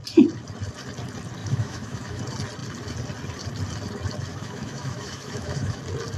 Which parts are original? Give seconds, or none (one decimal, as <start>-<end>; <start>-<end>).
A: 0.0-1.4; 2.2-4.3; 5.8-6.2

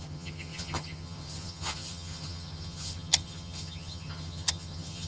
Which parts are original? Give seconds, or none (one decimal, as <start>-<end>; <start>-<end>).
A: none

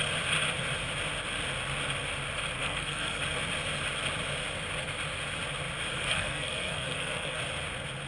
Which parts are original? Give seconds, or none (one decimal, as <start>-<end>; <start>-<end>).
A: 0.0-2.6; 3.2-5.9; 7.4-8.1

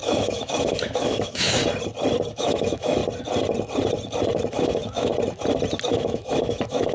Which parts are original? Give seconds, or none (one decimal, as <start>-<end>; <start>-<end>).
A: 1.6-2.3; 3.0-4.5; 5.1-5.9

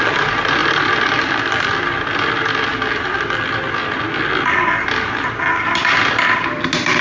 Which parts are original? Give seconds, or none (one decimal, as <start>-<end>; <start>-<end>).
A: 0.0-0.6; 2.1-7.0

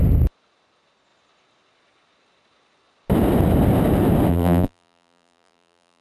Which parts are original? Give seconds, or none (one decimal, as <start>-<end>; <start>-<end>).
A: 0.0-4.3

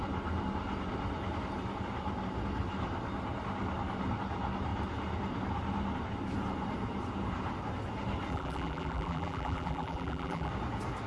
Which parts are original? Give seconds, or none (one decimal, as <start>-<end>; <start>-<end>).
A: 0.0-8.3; 10.5-11.1

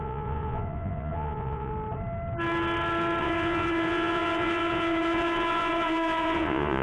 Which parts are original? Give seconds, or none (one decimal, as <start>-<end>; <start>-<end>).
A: 1.7-3.2